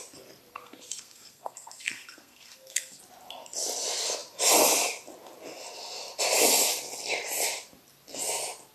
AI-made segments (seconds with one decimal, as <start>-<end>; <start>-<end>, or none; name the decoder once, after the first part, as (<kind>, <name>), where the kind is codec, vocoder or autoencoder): 0.5-3.0 (codec, SNAC)